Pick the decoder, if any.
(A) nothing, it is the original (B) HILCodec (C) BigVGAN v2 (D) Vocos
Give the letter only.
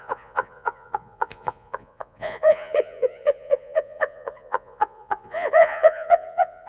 D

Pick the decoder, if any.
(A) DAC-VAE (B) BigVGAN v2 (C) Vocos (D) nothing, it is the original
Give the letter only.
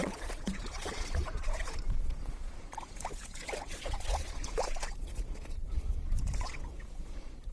C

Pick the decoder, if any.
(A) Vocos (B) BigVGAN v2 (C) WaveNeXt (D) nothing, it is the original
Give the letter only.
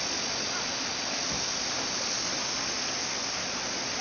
D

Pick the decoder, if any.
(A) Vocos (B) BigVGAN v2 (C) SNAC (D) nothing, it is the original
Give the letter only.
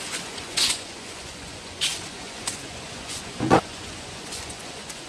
A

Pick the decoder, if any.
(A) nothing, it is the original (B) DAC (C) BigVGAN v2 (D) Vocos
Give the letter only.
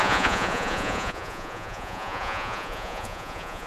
D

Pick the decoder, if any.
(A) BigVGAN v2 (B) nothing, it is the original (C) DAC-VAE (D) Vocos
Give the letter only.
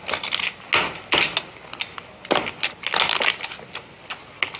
B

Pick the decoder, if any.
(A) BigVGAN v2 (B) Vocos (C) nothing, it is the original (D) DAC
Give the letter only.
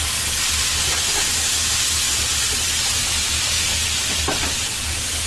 C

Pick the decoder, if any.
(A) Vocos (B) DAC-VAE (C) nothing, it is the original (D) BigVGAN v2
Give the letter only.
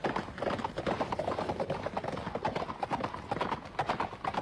C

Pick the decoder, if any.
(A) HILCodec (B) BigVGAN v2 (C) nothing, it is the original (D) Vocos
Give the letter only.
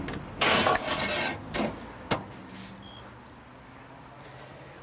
C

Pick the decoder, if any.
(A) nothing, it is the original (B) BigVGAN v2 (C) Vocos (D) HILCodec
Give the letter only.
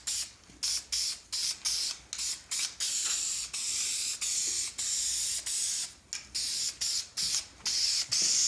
A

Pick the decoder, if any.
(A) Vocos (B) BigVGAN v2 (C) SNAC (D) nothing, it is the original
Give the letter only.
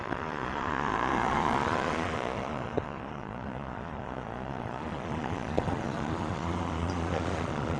A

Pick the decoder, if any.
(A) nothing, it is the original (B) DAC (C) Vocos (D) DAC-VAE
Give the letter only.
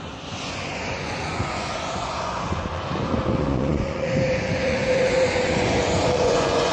C